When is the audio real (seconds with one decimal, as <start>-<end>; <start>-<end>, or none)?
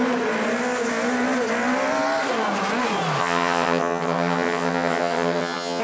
0.0-3.2